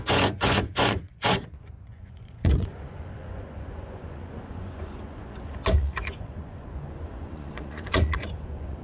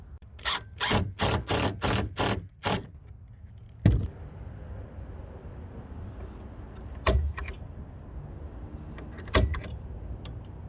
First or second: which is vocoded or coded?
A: first